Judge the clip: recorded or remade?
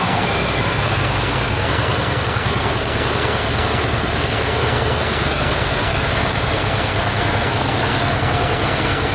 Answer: remade